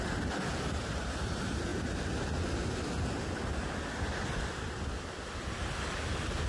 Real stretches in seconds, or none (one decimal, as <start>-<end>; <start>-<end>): 0.0-6.5